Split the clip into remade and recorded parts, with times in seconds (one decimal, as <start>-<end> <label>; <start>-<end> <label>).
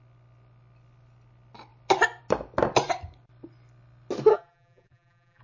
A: 0.0-4.3 recorded; 4.3-5.4 remade